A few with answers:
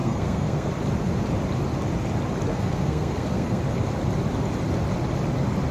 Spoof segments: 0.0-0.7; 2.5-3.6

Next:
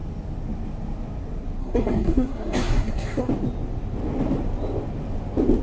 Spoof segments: 1.6-3.3

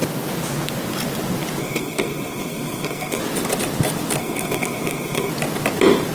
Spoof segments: 1.6-3.2; 4.2-5.3